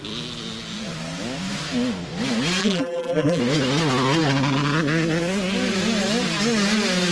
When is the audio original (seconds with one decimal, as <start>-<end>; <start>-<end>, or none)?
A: 0.0-2.6; 3.4-7.1